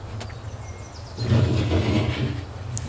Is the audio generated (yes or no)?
no